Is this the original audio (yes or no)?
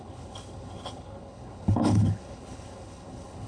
no